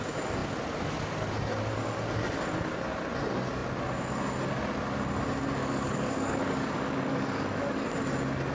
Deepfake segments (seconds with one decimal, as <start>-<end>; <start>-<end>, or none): 5.6-7.8